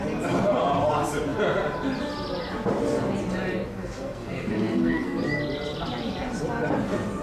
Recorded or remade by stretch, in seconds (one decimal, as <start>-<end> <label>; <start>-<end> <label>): 0.0-3.8 recorded; 3.8-5.2 remade; 5.2-7.2 recorded

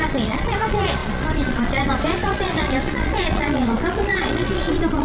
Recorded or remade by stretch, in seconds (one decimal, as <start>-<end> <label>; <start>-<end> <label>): 0.0-5.0 remade

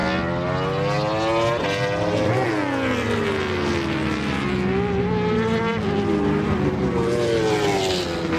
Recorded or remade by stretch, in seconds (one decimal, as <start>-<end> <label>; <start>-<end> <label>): 0.0-8.4 recorded

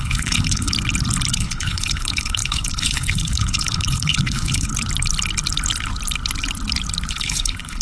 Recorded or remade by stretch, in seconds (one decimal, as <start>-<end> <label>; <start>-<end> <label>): 0.0-0.7 remade; 0.7-1.3 recorded; 1.3-4.7 remade; 4.7-7.1 recorded; 7.1-7.8 remade

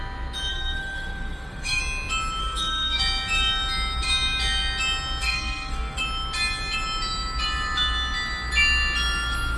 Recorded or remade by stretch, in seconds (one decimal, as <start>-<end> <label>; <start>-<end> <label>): 0.0-0.5 recorded; 0.5-1.8 remade; 1.8-2.4 recorded; 2.4-3.0 remade; 3.0-5.2 recorded; 5.2-6.0 remade; 6.0-9.6 recorded

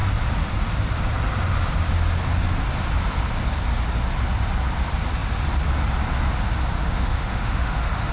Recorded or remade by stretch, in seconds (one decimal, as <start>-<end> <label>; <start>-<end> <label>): 0.0-6.8 recorded; 6.8-8.1 remade

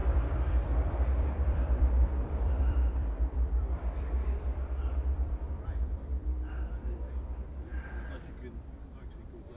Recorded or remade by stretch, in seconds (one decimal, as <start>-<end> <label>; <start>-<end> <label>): 0.0-9.6 remade